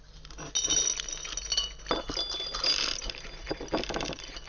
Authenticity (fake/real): real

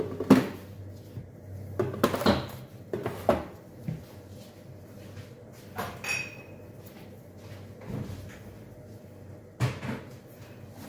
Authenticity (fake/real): real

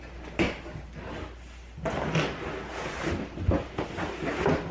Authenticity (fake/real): real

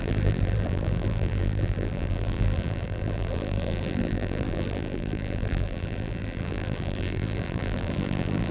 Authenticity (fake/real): fake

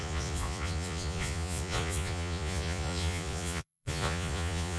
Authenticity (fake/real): fake